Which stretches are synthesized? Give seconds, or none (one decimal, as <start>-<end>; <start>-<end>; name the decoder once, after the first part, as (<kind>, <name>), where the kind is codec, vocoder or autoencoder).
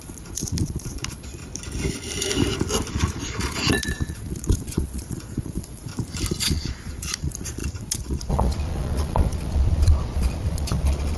0.0-1.4 (vocoder, Vocos); 2.9-5.9; 6.4-11.2